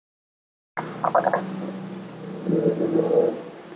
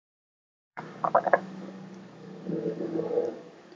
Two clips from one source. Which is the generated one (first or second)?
second